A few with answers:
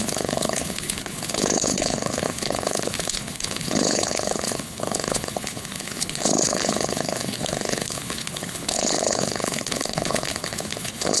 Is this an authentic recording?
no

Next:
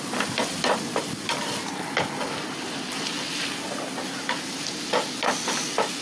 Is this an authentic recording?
yes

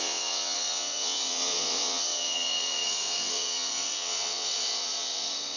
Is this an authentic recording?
no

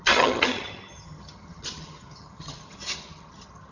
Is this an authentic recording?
no